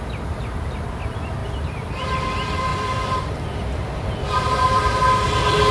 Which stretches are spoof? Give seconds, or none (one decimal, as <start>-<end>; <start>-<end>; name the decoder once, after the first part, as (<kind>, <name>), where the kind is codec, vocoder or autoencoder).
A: 1.4-2.2 (vocoder, BigVGAN v2); 2.7-4.8